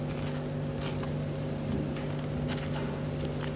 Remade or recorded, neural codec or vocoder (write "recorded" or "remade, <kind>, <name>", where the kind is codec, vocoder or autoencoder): recorded